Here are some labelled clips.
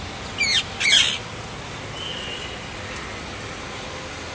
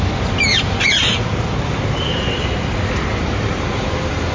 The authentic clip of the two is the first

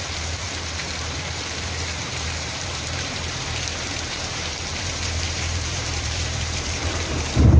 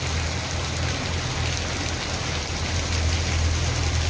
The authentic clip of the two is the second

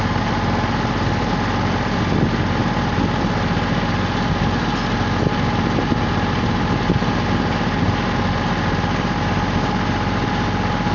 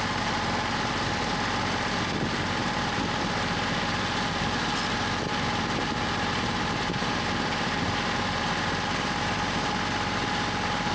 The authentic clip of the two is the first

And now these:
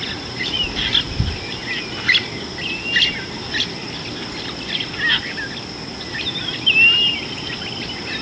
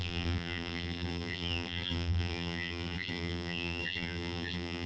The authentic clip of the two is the first